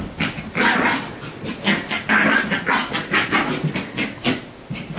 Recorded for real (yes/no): yes